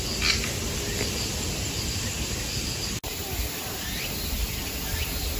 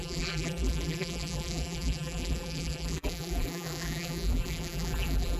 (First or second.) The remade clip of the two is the second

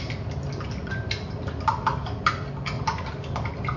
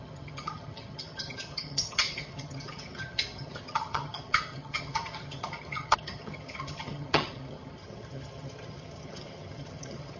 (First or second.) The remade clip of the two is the second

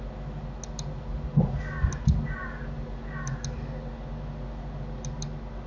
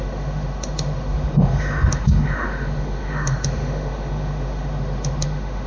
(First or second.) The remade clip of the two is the second